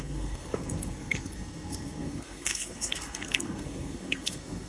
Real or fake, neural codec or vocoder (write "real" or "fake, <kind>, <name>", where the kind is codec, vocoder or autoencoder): fake, codec, SNAC